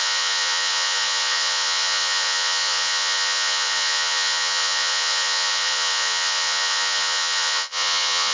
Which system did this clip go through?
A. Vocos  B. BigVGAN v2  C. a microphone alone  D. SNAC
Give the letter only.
A